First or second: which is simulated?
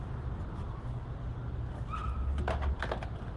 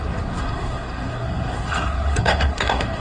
second